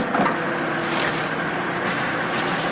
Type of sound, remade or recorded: recorded